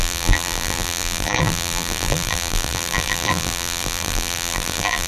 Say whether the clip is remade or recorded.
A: remade